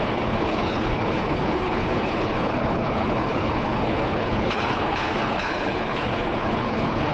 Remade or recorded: remade